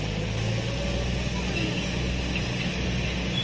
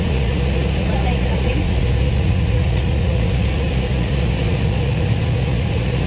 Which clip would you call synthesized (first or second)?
second